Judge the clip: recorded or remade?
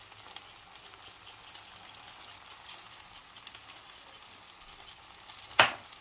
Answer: recorded